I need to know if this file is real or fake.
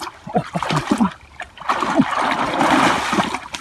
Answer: real